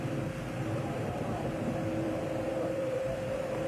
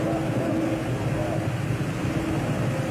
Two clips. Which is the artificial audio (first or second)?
first